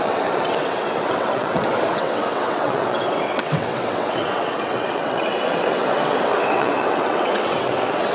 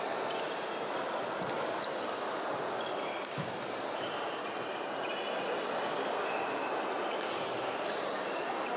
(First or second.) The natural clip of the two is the second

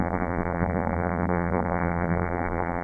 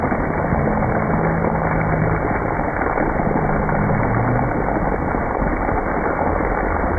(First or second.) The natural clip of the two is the second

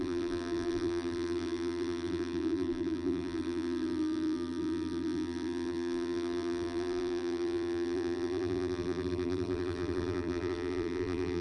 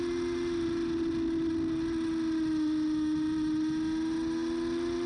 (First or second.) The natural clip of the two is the second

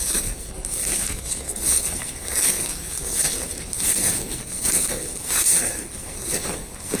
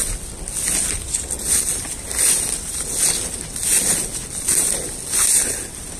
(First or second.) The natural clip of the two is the second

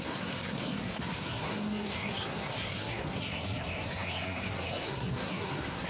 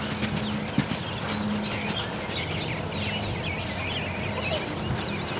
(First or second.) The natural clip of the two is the second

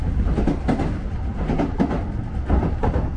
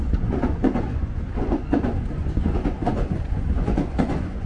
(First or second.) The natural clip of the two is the first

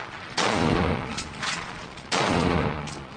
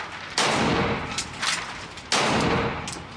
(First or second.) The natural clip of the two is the second